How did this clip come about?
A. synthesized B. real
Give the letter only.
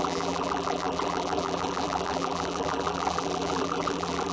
A